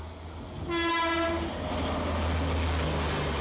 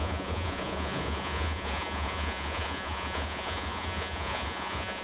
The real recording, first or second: first